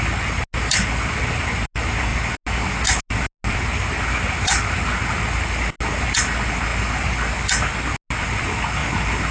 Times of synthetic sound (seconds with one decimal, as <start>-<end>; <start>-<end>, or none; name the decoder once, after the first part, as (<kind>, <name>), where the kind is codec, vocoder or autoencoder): 6.7-7.7 (vocoder, BigVGAN v2); 8.8-9.3